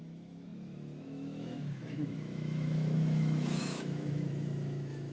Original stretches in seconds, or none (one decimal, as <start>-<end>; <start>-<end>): none